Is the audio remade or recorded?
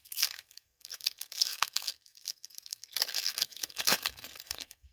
remade